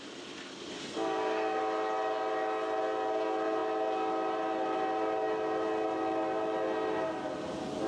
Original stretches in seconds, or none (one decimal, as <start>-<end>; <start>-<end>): 0.0-0.8; 1.6-7.9